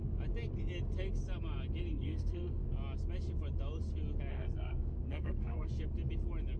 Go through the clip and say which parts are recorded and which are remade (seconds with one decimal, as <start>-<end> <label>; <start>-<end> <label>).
0.0-1.9 recorded; 1.9-2.7 remade; 2.7-4.3 recorded; 4.3-5.7 remade; 5.7-6.6 recorded